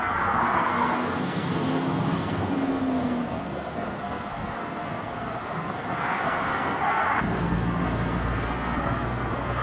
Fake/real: fake